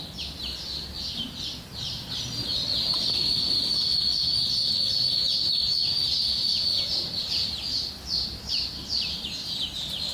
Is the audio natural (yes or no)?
yes